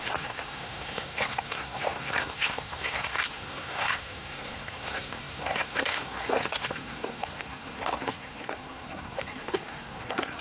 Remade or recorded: remade